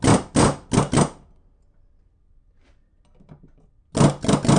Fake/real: real